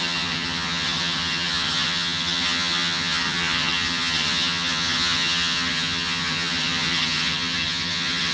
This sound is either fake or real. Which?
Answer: fake